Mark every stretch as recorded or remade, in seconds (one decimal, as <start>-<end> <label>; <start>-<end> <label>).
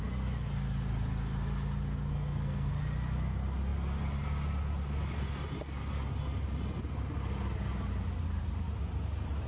0.0-2.1 recorded; 2.1-2.7 remade; 2.7-9.5 recorded